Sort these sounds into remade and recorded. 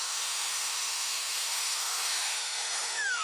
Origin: remade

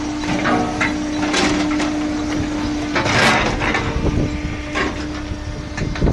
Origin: recorded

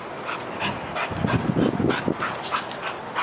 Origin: recorded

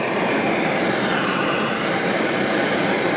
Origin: remade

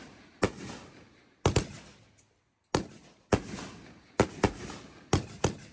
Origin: recorded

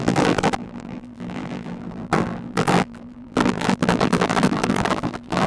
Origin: remade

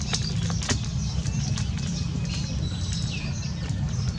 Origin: recorded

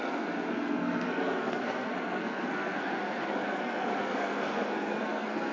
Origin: remade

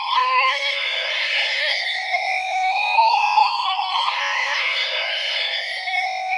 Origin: remade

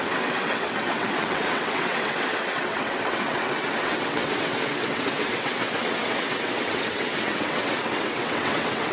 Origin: remade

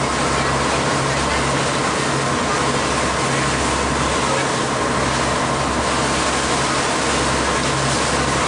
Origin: recorded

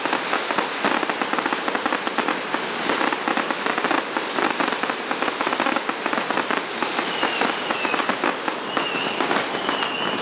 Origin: recorded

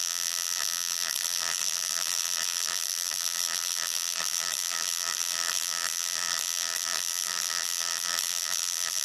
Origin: remade